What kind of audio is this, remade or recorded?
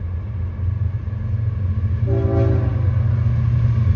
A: recorded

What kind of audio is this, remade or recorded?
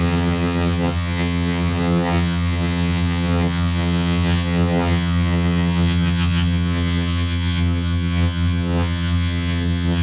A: remade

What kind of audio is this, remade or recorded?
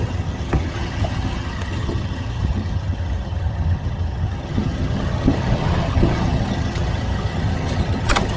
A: remade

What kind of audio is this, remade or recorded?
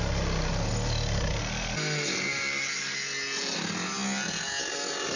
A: recorded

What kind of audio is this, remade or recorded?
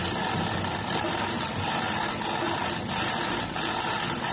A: recorded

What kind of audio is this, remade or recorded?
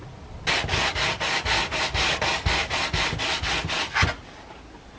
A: recorded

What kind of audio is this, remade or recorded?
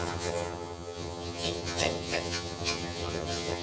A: remade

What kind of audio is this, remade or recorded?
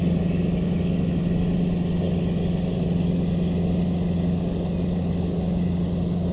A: recorded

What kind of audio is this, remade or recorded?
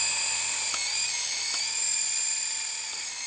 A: recorded